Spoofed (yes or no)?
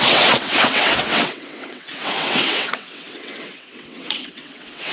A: yes